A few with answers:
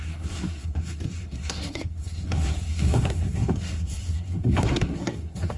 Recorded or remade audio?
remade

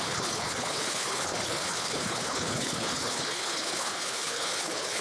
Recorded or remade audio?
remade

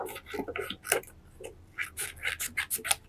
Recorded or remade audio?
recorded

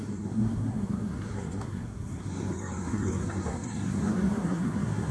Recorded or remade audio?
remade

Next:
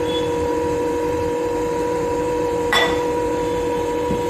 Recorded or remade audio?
remade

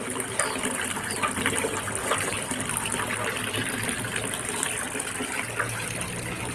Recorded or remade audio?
recorded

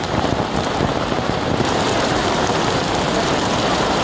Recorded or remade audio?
remade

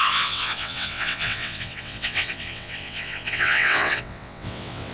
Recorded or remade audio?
remade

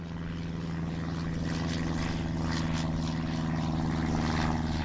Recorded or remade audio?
recorded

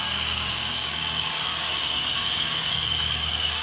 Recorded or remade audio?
remade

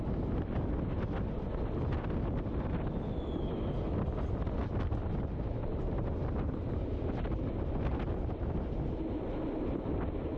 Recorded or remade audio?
recorded